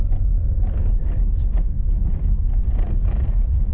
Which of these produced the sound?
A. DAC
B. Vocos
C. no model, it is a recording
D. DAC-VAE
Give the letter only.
C